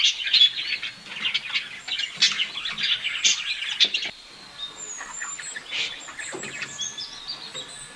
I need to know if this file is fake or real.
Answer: real